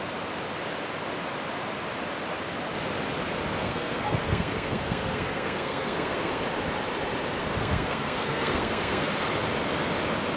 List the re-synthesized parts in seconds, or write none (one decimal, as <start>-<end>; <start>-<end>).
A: 3.6-6.4; 7.4-9.1